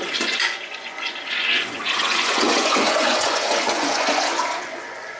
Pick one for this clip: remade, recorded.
remade